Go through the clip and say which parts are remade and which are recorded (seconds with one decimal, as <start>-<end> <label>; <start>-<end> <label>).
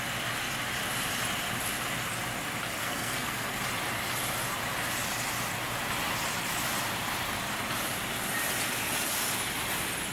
0.0-2.8 recorded; 2.8-3.6 remade; 3.6-10.1 recorded